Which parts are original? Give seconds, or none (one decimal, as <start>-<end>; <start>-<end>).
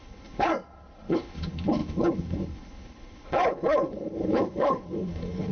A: 0.5-1.1